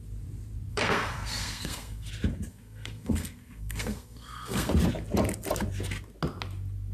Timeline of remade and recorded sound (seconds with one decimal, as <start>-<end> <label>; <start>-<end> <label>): 0.0-0.7 recorded; 0.7-2.1 remade; 2.1-2.5 recorded; 2.5-4.7 remade; 4.7-6.9 recorded